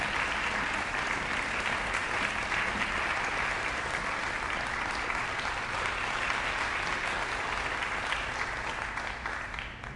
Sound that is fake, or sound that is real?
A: real